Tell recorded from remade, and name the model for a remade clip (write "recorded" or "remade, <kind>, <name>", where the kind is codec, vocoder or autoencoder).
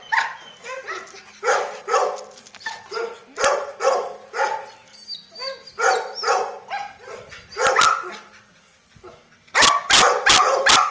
recorded